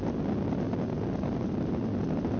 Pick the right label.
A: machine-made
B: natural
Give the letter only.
B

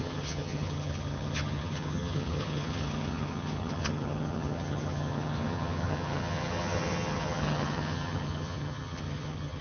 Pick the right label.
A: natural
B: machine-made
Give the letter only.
B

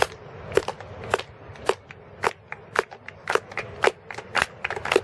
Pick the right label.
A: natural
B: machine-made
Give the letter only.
A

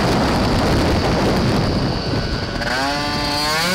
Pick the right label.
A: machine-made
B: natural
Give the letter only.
B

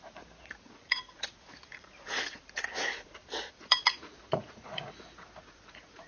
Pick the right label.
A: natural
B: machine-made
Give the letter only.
B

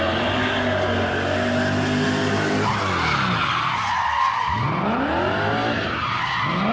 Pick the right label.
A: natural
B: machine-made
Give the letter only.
A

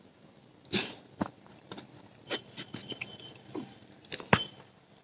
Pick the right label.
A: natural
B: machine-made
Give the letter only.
B